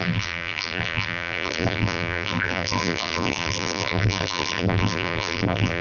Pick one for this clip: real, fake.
fake